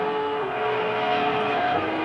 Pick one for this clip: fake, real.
fake